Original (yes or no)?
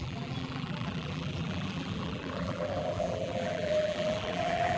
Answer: no